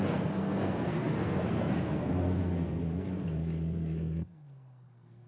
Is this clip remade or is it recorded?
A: remade